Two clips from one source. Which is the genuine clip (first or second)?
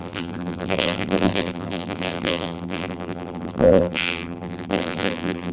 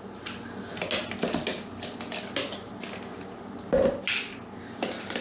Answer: second